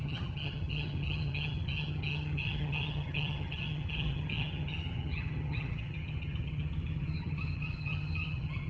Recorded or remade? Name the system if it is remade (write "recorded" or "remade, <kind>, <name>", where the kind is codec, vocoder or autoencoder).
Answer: remade, vocoder, HiFi-GAN